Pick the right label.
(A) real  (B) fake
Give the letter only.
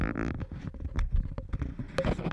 A